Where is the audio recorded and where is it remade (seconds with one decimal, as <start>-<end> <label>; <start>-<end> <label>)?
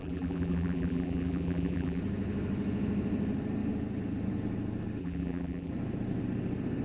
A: 0.0-2.0 remade; 2.0-5.0 recorded; 5.0-5.7 remade; 5.7-6.8 recorded